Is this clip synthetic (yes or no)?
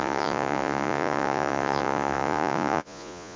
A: yes